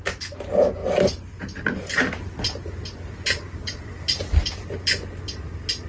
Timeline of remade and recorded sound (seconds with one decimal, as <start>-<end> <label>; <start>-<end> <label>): 0.0-0.8 recorded; 0.8-4.3 remade; 4.3-5.9 recorded

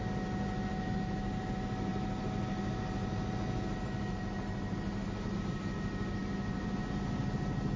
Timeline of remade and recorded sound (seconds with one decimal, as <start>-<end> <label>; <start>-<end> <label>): 0.0-7.8 recorded

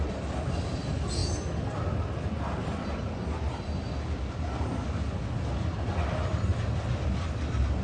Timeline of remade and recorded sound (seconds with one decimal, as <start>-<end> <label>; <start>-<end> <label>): 0.0-7.8 recorded

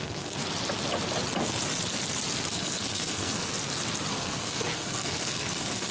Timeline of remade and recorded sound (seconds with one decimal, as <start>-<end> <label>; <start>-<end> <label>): 0.0-0.4 remade; 0.4-2.5 recorded; 2.5-3.5 remade; 3.5-4.1 recorded; 4.1-5.9 remade